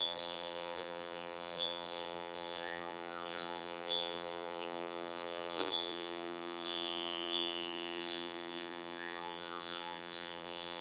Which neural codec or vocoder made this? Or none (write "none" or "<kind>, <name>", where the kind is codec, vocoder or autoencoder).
vocoder, BigVGAN v2